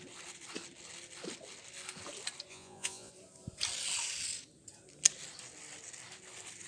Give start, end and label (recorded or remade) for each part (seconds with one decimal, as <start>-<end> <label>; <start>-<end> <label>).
0.0-2.5 recorded; 2.5-3.1 remade; 3.1-6.7 recorded